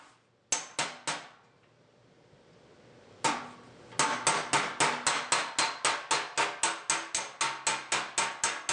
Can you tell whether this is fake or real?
real